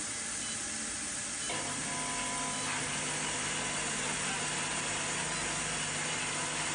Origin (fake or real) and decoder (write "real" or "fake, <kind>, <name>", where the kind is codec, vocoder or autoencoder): real